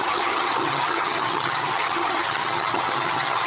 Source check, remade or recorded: remade